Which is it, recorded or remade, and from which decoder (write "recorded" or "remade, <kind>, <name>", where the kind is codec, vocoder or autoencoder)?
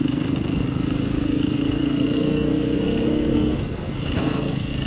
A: remade, codec, SNAC